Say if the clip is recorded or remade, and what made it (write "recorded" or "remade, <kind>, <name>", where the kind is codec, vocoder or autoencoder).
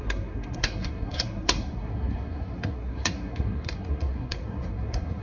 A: remade, codec, SNAC